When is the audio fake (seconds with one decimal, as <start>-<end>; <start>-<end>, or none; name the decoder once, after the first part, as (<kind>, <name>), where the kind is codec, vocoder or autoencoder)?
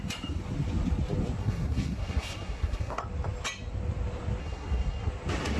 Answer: 1.4-3.0 (codec, SNAC); 4.4-5.1